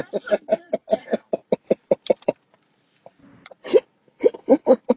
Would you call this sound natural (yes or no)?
no